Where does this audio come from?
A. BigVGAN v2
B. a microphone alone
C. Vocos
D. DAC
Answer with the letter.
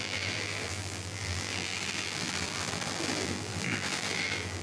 A